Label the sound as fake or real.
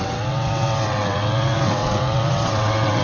fake